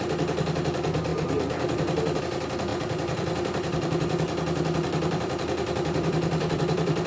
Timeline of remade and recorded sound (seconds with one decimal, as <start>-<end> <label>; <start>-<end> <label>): 0.0-1.1 recorded; 1.1-2.2 remade; 2.2-2.7 recorded; 2.7-7.1 remade